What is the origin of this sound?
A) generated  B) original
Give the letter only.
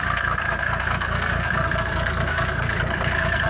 A